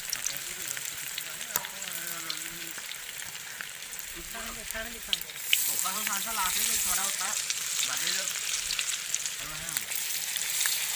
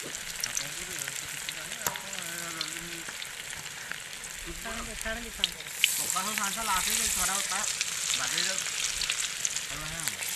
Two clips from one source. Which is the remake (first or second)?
first